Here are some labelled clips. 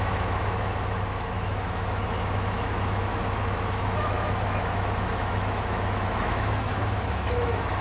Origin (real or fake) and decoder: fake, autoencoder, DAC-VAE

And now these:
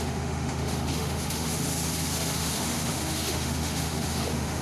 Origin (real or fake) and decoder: fake, autoencoder, DAC-VAE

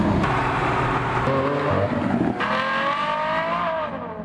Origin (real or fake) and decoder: real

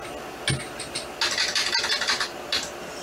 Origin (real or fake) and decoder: real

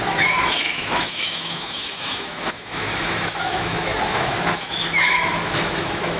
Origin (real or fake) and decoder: fake, autoencoder, DAC-VAE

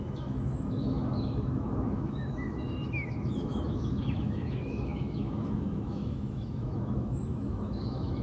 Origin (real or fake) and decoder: fake, autoencoder, DAC-VAE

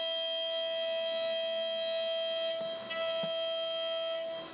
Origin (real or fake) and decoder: real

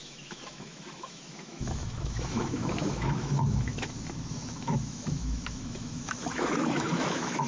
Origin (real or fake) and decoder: fake, autoencoder, DAC-VAE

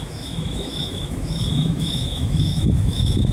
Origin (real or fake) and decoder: fake, autoencoder, DAC-VAE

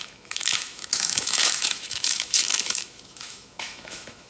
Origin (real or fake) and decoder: fake, autoencoder, DAC-VAE